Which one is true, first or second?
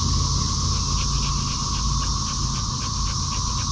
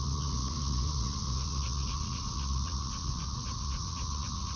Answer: first